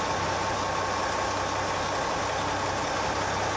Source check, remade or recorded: recorded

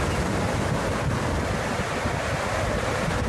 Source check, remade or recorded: recorded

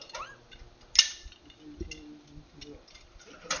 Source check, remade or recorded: recorded